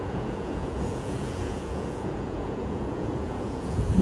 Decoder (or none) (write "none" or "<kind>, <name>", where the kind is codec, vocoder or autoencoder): vocoder, Vocos